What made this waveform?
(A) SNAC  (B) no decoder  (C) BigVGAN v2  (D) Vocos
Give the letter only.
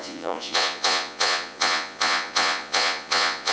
D